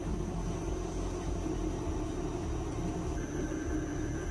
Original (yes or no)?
yes